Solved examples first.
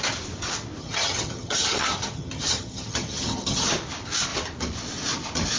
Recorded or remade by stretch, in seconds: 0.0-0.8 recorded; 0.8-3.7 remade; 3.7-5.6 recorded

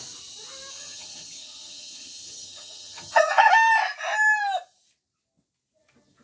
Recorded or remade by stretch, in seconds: 0.0-0.7 recorded; 0.7-3.5 remade; 3.5-6.2 recorded

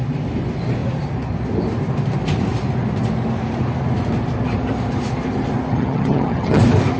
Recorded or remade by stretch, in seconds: 0.0-5.7 recorded; 5.7-6.6 remade; 6.6-7.0 recorded

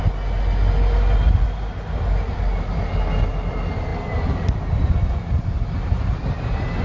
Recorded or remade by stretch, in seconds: 0.0-6.8 recorded

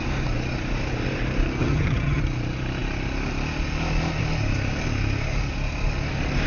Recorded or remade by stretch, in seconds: 0.0-1.6 recorded; 1.6-2.2 remade; 2.2-6.5 recorded

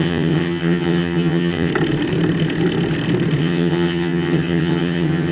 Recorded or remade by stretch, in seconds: 0.0-1.7 remade; 1.7-3.4 recorded; 3.4-5.3 remade